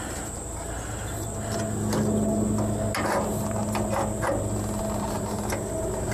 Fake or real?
real